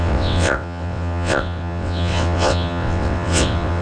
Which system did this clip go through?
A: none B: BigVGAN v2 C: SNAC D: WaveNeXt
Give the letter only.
D